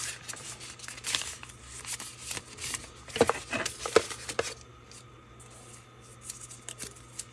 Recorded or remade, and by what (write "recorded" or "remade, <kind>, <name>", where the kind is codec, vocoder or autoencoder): recorded